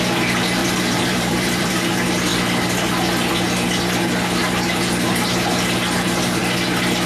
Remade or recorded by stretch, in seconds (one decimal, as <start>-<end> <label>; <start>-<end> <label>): 0.0-0.6 recorded; 0.6-1.7 remade; 1.7-7.1 recorded